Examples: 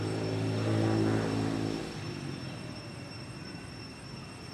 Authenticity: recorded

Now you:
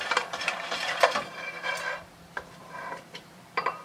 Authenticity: remade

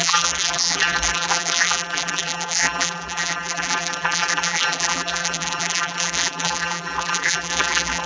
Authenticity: remade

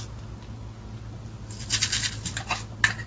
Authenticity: recorded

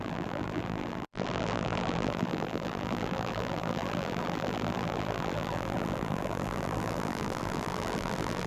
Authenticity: remade